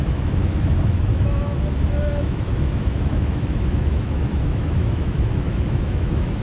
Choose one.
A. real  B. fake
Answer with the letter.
B